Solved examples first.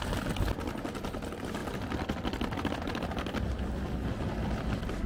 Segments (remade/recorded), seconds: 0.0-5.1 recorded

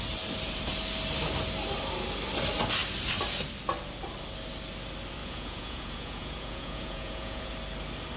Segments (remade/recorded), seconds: 0.0-5.2 recorded; 5.2-7.5 remade; 7.5-8.2 recorded

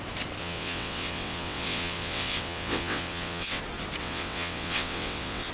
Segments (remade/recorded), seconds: 0.0-0.4 recorded; 0.4-3.6 remade; 3.6-4.0 recorded; 4.0-5.5 remade

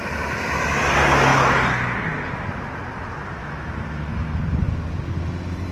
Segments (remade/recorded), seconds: 0.0-3.4 recorded; 3.4-4.4 remade; 4.4-5.7 recorded

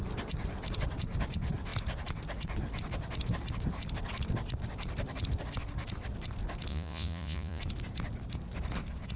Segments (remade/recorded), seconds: 0.0-6.7 recorded; 6.7-7.6 remade; 7.6-9.2 recorded

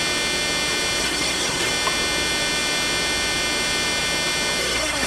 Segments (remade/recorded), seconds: 0.0-1.0 recorded; 1.0-1.7 remade; 1.7-4.6 recorded; 4.6-5.1 remade

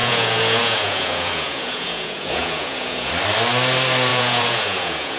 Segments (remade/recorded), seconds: 0.0-3.1 remade; 3.1-4.1 recorded; 4.1-5.2 remade